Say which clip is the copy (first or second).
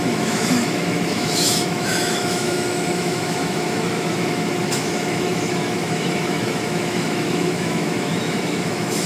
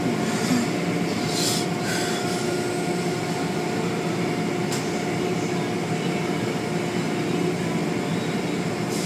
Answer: first